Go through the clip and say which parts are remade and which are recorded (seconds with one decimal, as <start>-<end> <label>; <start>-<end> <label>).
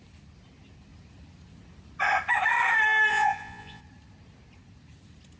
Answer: 0.0-3.1 recorded; 3.1-3.8 remade; 3.8-5.4 recorded